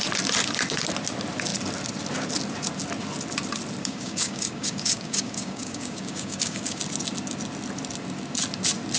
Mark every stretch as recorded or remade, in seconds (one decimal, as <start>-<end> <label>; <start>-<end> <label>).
0.0-3.8 recorded; 3.8-6.8 remade; 6.8-9.0 recorded